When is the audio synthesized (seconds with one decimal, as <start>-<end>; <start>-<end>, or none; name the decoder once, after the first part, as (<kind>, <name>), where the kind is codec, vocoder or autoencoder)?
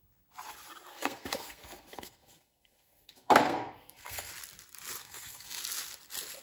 0.9-4.3 (codec, SNAC); 5.0-5.6